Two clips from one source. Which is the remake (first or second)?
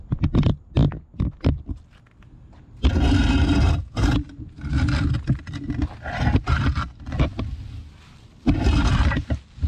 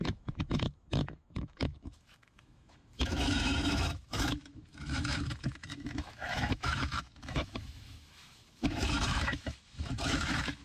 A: second